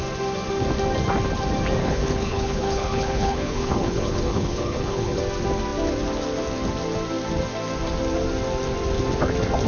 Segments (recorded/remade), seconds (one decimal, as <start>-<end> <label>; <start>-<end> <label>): 0.0-1.8 recorded; 1.8-5.2 remade; 5.2-9.7 recorded